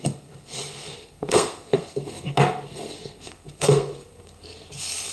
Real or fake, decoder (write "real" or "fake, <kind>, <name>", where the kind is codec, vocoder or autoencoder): fake, codec, SNAC